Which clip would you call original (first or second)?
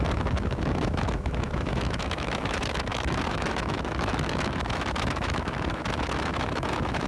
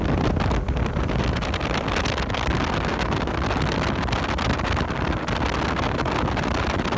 second